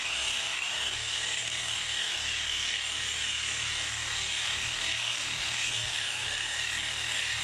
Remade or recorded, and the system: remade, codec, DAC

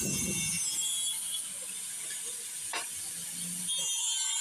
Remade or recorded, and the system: recorded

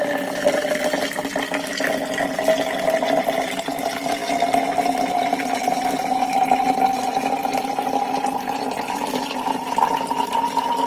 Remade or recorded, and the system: recorded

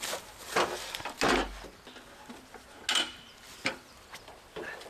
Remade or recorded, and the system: recorded